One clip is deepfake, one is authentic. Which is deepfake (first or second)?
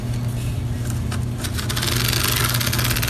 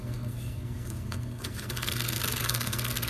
second